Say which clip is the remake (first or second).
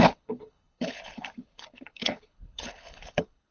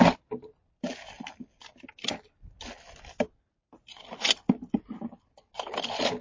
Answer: first